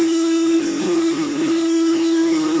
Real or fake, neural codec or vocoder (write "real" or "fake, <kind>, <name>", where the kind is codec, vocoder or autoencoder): fake, codec, SNAC